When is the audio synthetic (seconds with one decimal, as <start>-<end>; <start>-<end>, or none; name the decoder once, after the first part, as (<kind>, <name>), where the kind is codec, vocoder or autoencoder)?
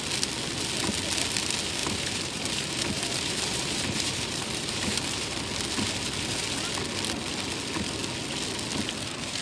1.8-5.4 (vocoder, BigVGAN v2)